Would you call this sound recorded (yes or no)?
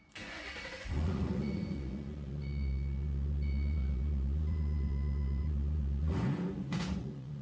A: no